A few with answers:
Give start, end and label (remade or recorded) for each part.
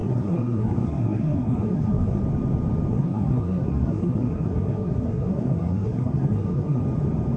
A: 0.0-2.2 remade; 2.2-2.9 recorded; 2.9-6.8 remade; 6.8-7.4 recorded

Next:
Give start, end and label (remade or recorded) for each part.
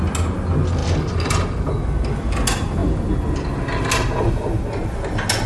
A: 0.0-5.5 recorded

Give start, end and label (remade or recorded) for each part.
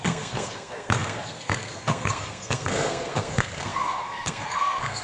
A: 0.0-5.0 remade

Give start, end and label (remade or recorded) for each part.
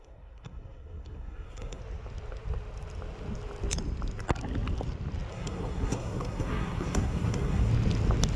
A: 0.0-1.8 remade; 1.8-5.3 recorded; 5.3-7.7 remade; 7.7-8.4 recorded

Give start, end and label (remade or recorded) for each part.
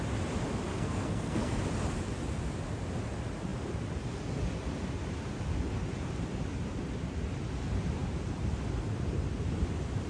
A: 0.0-0.7 recorded; 0.7-1.6 remade; 1.6-10.1 recorded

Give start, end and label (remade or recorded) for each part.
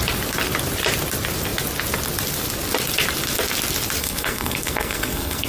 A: 0.0-4.0 recorded; 4.0-5.5 remade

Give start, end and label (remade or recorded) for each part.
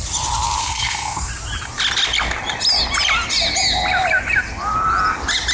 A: 0.0-0.6 recorded; 0.6-1.3 remade; 1.3-5.5 recorded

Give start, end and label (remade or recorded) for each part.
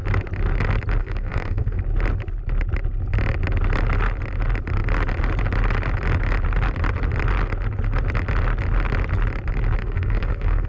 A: 0.0-1.0 recorded; 1.0-1.8 remade; 1.8-9.8 recorded; 9.8-10.7 remade